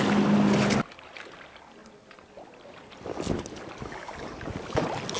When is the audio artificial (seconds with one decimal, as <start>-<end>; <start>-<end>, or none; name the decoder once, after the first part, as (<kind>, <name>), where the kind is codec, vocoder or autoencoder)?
none